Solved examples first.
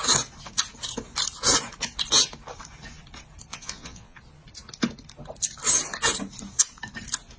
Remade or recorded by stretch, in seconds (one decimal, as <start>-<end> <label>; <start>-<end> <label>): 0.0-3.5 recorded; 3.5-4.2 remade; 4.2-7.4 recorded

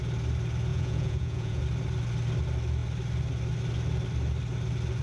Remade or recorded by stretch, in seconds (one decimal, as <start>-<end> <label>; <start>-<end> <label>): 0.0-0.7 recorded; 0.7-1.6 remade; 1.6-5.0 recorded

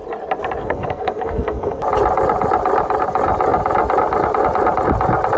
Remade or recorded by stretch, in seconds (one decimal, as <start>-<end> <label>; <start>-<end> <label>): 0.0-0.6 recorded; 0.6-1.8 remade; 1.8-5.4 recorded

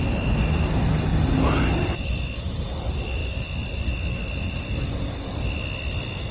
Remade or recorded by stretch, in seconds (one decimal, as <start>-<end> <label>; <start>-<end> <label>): 0.0-6.3 recorded